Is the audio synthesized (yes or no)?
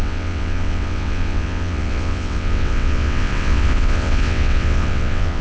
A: yes